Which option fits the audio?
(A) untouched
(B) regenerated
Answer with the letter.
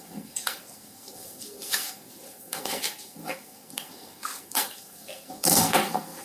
B